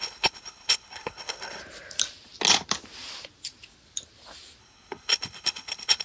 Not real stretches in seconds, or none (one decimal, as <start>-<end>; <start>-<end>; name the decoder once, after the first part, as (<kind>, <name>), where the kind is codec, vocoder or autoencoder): 0.0-1.6 (codec, HILCodec); 4.6-6.0